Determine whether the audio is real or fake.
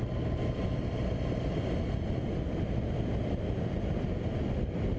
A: real